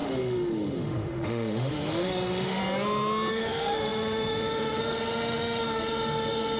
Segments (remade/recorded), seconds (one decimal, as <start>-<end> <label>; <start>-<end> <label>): 0.0-2.6 remade; 2.6-3.3 recorded; 3.3-6.6 remade